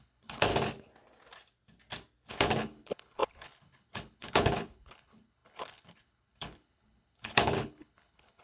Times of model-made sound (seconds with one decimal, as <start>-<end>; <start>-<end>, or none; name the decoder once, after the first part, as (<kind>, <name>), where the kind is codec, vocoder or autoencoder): 0.0-0.5 (codec, HILCodec); 2.3-8.4